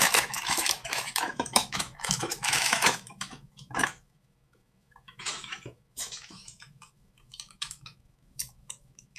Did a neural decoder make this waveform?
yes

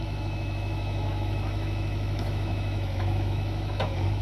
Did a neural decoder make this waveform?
yes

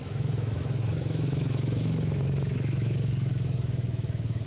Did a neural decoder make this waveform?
yes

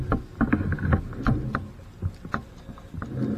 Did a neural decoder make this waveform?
no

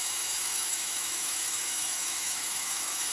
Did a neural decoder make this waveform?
yes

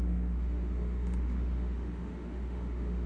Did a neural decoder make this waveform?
yes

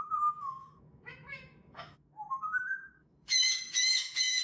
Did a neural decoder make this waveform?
yes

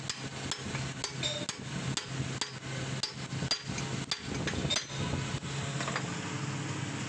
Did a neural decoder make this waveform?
no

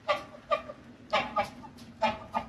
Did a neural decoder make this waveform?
no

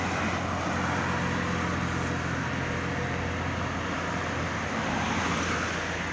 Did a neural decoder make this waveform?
no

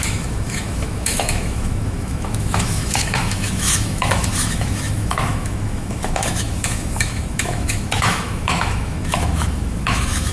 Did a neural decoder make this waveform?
yes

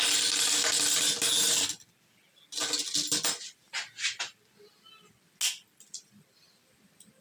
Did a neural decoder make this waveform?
no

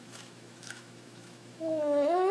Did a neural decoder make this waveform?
yes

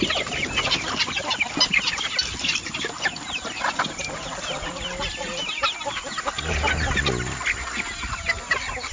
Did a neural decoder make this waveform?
no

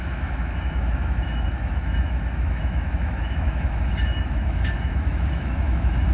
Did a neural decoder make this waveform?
yes